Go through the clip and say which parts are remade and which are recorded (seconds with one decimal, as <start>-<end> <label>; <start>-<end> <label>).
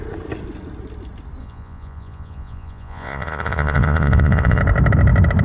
0.0-1.4 recorded; 1.4-4.6 remade; 4.6-5.4 recorded